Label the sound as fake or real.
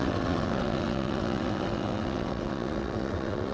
fake